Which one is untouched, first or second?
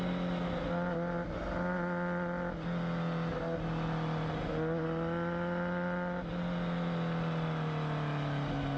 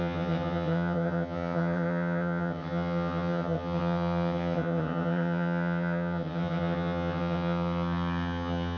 first